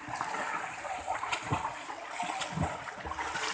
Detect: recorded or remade recorded